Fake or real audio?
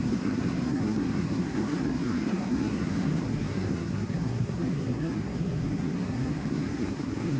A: fake